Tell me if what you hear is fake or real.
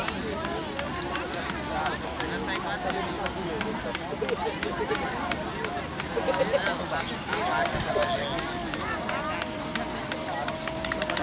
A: real